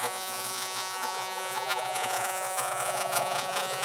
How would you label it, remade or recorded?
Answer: remade